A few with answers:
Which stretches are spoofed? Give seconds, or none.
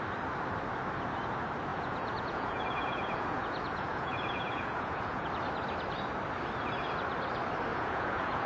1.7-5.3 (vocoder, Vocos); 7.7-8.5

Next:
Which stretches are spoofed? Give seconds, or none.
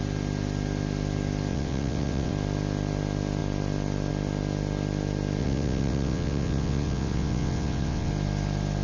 1.5-2.3 (vocoder, WaveNeXt); 5.4-8.1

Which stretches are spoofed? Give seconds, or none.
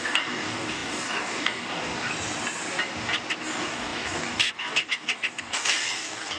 0.0-2.1 (codec, DAC); 3.4-6.4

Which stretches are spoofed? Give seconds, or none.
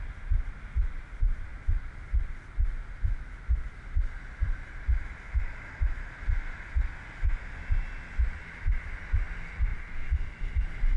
none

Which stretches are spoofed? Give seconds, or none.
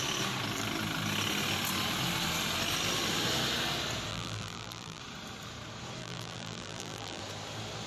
4.1-5.0 (vocoder, BigVGAN v2); 6.0-7.2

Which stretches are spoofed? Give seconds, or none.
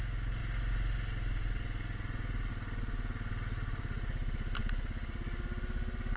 none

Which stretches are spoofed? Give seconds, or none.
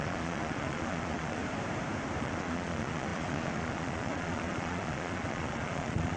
0.0-1.4 (vocoder, Vocos); 2.2-6.2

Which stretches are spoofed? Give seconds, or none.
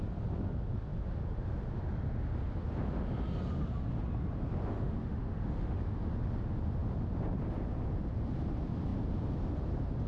4.7-5.8 (autoencoder, DAC-VAE)